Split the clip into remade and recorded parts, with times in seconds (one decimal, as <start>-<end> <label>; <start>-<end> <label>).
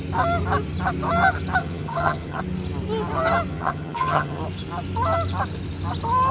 0.0-1.6 recorded; 1.6-2.4 remade; 2.4-3.5 recorded; 3.5-4.4 remade; 4.4-6.3 recorded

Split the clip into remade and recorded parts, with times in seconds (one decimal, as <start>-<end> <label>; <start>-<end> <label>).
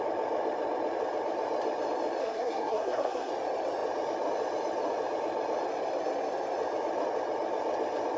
0.0-2.2 recorded; 2.2-3.3 remade; 3.3-8.2 recorded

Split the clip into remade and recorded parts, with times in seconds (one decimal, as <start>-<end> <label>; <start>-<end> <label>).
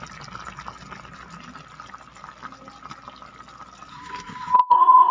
0.0-3.9 recorded; 3.9-5.1 remade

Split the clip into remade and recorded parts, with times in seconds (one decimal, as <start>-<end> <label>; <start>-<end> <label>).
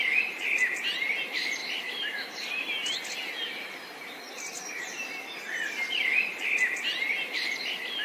0.0-1.6 recorded; 1.6-3.1 remade; 3.1-8.0 recorded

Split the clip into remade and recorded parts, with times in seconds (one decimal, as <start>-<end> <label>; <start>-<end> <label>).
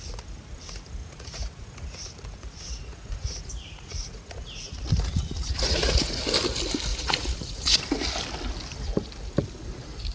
0.0-1.0 recorded; 1.0-6.2 remade; 6.2-6.9 recorded; 6.9-7.8 remade; 7.8-10.1 recorded